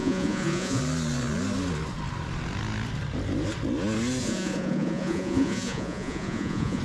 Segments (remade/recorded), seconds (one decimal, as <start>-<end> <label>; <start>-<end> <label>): 0.0-0.8 remade; 0.8-4.2 recorded; 4.2-6.8 remade